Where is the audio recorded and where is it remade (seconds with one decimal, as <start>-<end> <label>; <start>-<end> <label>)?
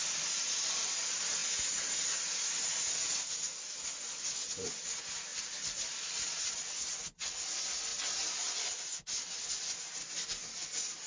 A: 0.0-5.3 recorded; 5.3-6.5 remade; 6.5-7.9 recorded; 7.9-8.5 remade; 8.5-11.1 recorded